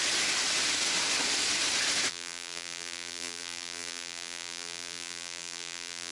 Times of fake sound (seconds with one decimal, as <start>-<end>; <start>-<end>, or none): 2.1-6.1

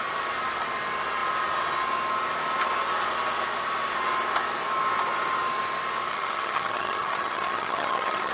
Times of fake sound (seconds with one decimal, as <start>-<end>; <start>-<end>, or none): 6.1-8.3

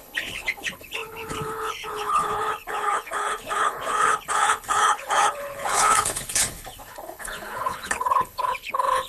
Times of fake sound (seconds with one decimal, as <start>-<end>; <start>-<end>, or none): 0.0-9.1

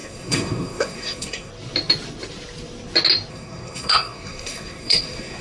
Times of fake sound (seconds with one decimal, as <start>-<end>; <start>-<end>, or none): 0.0-1.5; 3.3-5.4

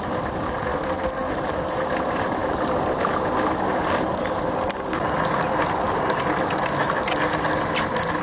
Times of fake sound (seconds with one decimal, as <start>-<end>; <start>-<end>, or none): 0.7-1.3

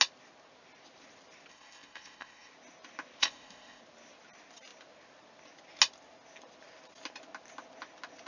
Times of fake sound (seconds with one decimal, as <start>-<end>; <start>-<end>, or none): 1.5-2.5; 3.2-3.8

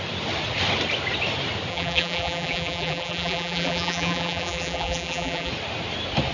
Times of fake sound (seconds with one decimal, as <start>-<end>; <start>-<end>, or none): 1.7-5.5